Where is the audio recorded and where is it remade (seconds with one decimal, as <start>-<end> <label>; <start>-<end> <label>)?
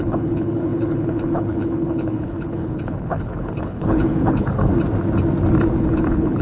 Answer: 0.0-4.7 remade; 4.7-5.8 recorded; 5.8-6.4 remade